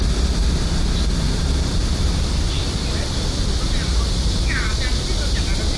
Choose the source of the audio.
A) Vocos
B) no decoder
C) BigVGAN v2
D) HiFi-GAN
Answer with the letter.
B